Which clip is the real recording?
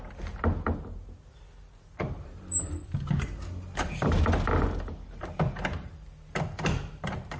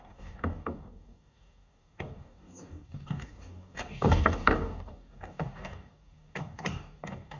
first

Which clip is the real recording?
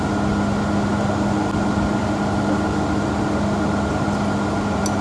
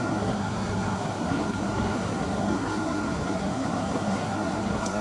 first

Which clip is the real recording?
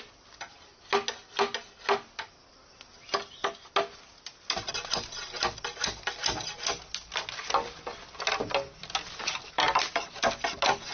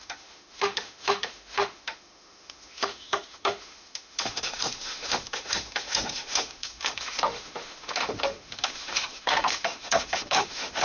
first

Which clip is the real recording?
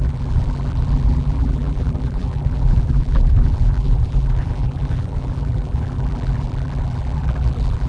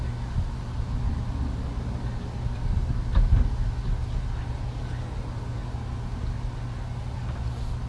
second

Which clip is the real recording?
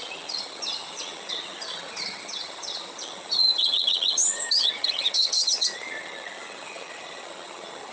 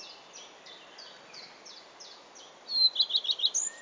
second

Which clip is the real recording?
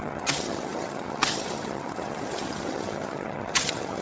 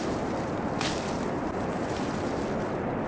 second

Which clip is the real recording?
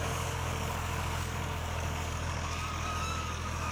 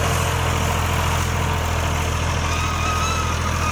second